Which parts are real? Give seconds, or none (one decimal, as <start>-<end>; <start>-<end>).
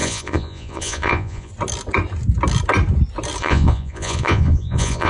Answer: 1.5-3.4